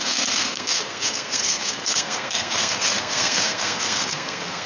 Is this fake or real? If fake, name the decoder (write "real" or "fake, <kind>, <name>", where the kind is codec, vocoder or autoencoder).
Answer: fake, codec, SNAC